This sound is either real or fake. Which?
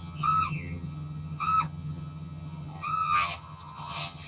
fake